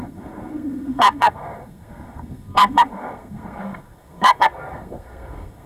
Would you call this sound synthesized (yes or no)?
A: yes